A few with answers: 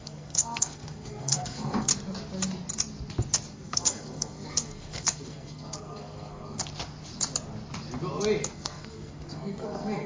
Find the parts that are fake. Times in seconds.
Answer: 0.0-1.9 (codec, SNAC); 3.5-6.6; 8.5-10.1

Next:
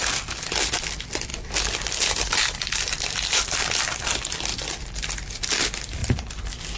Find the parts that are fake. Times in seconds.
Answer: 1.3-3.8 (vocoder, BigVGAN v2); 4.5-5.5; 6.0-6.8

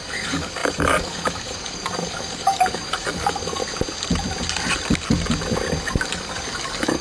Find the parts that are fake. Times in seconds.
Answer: 0.0-3.6 (codec, DAC); 5.8-7.0

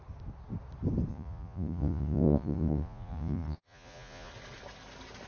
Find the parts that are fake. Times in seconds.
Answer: 1.1-4.3 (vocoder, Vocos)

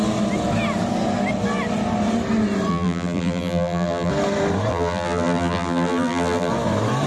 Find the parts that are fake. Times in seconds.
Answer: 2.7-4.1 (vocoder, BigVGAN v2); 4.7-6.5